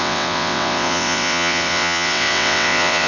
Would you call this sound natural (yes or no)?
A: no